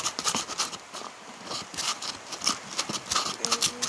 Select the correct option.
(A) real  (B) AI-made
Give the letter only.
A